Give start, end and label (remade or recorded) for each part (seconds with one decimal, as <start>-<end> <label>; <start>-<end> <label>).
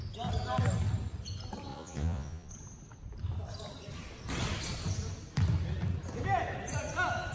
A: 0.0-1.7 recorded; 1.7-2.5 remade; 2.5-7.3 recorded